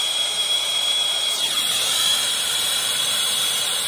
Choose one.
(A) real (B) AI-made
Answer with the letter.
B